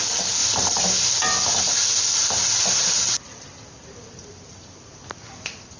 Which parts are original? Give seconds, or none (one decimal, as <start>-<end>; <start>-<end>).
0.0-0.4; 1.1-5.8